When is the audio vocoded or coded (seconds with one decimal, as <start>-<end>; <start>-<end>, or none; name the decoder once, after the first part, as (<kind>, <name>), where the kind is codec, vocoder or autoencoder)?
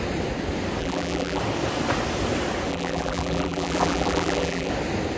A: 0.8-1.4 (vocoder, BigVGAN v2); 2.7-4.7